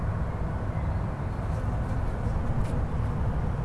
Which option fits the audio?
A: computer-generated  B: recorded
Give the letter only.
B